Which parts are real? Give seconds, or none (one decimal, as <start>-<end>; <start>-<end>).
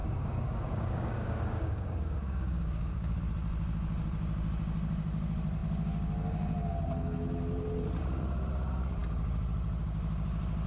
3.2-10.7